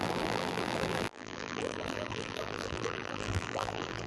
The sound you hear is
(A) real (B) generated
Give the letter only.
B